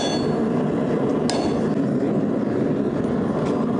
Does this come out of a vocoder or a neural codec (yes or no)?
no